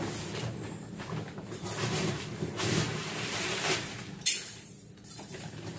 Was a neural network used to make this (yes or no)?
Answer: yes